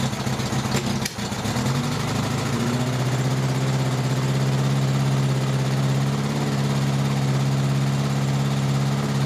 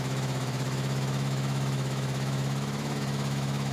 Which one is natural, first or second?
first